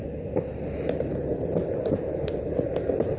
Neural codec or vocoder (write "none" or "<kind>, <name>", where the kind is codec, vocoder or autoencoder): none